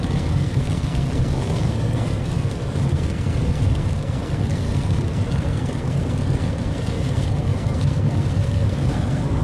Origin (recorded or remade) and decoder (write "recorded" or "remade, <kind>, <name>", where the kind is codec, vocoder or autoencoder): remade, codec, SNAC